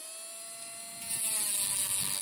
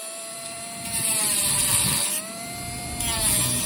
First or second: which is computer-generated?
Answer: second